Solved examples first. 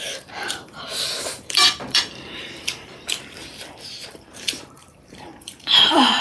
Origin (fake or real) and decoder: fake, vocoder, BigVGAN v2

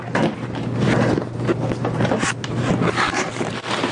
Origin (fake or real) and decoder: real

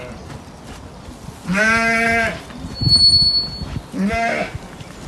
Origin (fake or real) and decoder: real